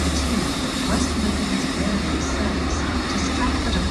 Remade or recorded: remade